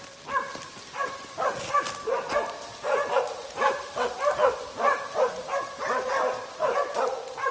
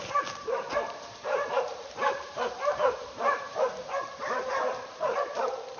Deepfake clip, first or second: second